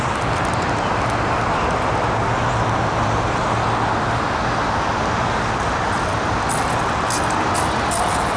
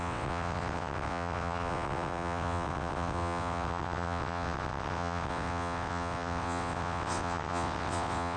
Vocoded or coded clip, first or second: second